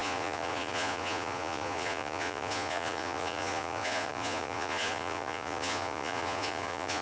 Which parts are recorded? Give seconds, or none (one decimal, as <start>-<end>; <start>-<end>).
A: none